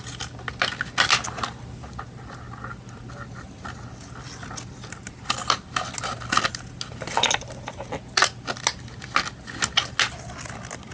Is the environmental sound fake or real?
real